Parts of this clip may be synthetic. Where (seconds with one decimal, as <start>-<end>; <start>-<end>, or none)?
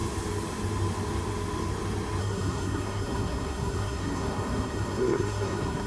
2.2-5.9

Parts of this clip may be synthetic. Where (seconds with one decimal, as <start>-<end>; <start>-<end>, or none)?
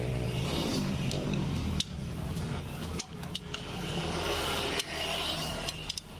0.7-4.4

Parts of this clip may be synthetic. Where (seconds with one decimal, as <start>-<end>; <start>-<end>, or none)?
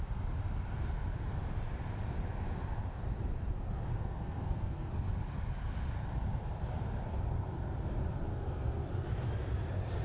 3.9-4.9; 8.3-8.9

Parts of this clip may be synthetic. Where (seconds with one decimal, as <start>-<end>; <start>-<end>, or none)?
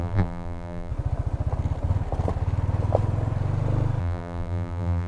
0.0-0.9; 4.0-5.1